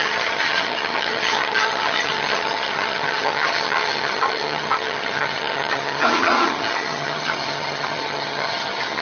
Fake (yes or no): yes